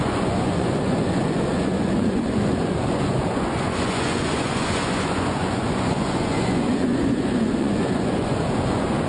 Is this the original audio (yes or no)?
no